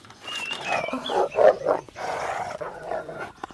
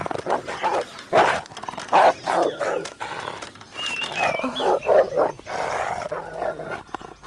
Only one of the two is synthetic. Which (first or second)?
first